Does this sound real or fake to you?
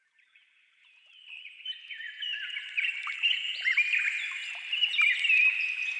fake